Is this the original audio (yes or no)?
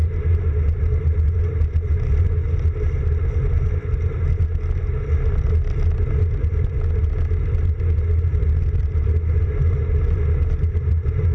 yes